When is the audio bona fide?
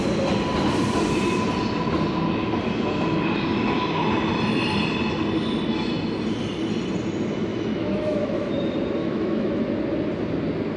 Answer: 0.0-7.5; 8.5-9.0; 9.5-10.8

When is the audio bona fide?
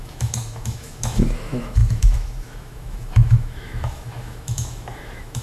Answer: none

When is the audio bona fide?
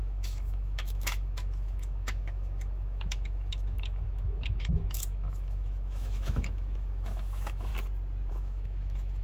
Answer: 7.7-8.3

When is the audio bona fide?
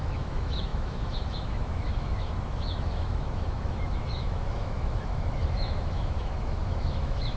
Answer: none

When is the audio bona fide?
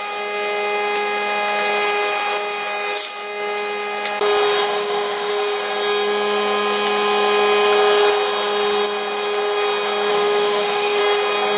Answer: 0.0-4.6; 5.3-10.1; 11.0-11.6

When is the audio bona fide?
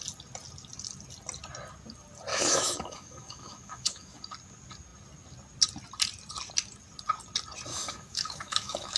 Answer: 0.0-2.3; 4.2-7.7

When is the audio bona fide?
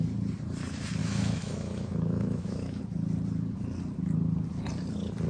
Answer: 0.0-1.0; 2.8-5.3